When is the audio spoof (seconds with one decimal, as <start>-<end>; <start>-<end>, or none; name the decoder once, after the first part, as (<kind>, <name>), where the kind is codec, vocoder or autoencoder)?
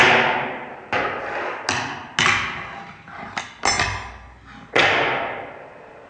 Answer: none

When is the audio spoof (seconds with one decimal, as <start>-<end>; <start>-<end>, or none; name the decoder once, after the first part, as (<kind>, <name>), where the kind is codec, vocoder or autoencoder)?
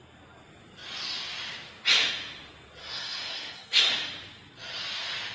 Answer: 2.8-3.9 (codec, SNAC)